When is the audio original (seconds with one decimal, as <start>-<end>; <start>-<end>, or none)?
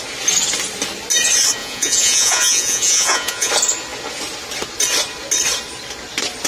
0.0-1.6; 3.5-6.5